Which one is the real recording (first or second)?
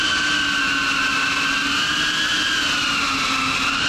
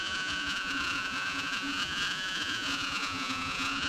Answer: first